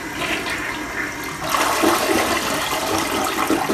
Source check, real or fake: real